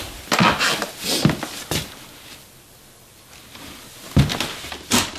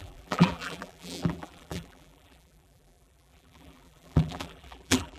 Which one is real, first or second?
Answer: first